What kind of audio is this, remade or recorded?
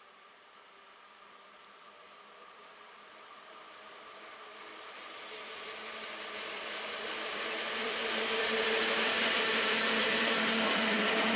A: remade